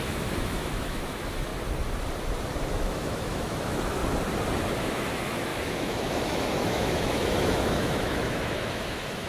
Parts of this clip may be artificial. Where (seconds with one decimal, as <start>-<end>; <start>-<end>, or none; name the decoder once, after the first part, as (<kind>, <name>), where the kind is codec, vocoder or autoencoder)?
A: 0.0-1.5 (autoencoder, DAC-VAE); 2.7-4.0; 4.8-9.3